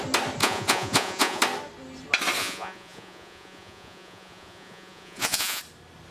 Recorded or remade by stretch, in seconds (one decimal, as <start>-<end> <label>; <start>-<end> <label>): 0.0-0.4 recorded; 0.4-1.4 remade; 1.4-2.4 recorded; 2.4-5.6 remade; 5.6-6.1 recorded